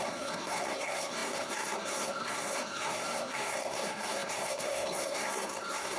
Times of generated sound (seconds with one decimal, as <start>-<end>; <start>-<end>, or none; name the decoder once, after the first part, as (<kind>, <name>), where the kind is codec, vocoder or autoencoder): 0.0-6.0 (codec, SNAC)